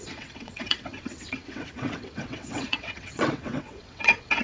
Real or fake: fake